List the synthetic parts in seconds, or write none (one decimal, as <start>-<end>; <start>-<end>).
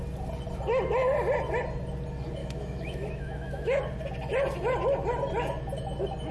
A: 2.4-3.8